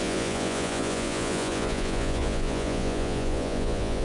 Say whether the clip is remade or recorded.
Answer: remade